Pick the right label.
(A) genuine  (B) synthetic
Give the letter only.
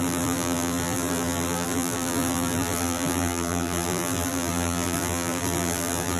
B